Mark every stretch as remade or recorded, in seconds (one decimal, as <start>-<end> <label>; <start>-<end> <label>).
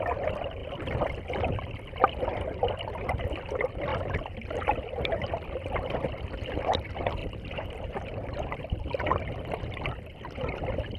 0.0-0.6 recorded; 0.6-1.1 remade; 1.1-7.2 recorded; 7.2-8.7 remade; 8.7-11.0 recorded